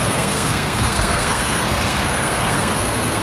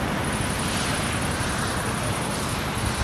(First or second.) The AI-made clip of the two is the first